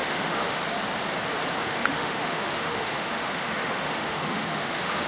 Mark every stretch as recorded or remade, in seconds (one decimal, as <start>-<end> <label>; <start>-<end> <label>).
0.0-0.6 remade; 0.6-1.6 recorded; 1.6-5.1 remade